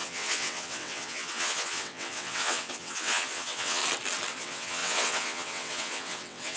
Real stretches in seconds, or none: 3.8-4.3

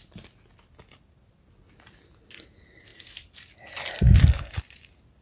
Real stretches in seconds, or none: 0.0-5.2

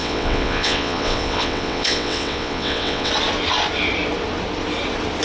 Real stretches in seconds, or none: 3.1-5.2

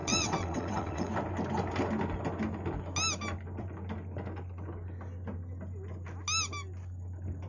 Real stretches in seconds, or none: 1.1-7.5